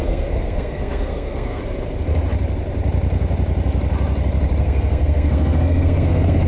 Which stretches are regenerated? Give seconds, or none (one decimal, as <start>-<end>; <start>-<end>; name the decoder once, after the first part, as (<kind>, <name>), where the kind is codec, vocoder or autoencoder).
0.0-1.6 (codec, SNAC); 4.6-6.5